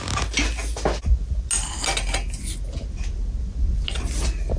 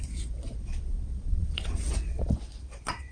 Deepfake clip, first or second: second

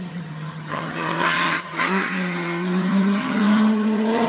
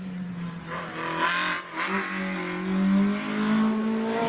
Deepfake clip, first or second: first